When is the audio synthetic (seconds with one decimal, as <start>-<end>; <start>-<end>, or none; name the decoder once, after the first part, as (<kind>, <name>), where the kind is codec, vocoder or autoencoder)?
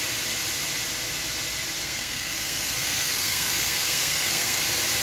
1.8-4.6 (codec, SNAC)